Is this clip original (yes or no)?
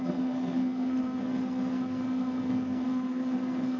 no